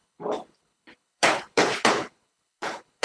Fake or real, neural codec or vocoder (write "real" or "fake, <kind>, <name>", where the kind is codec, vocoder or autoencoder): fake, codec, HILCodec